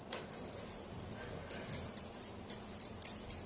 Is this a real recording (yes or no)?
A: yes